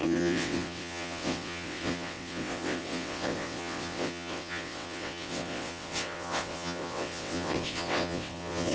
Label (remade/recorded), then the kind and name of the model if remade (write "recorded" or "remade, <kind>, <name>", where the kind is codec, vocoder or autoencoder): remade, vocoder, WaveNeXt